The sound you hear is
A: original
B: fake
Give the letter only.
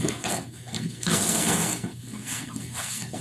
B